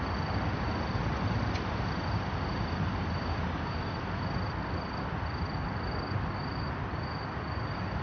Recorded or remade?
recorded